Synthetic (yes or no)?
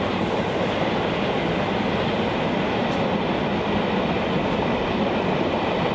no